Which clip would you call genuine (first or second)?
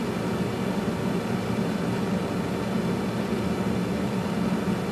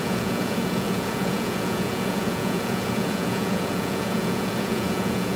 first